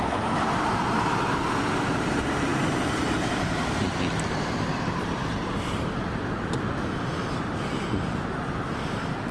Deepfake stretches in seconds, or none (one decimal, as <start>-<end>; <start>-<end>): 0.0-9.3